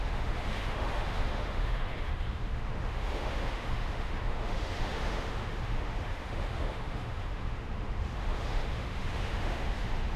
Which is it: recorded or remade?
remade